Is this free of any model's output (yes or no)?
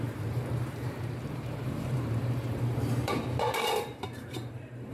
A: no